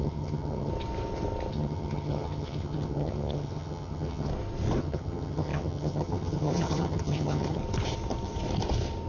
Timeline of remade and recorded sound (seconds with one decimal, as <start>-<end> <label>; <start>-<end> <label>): 0.0-0.7 remade; 0.7-1.5 recorded; 1.5-4.3 remade; 4.3-4.8 recorded; 4.8-7.6 remade; 7.6-9.1 recorded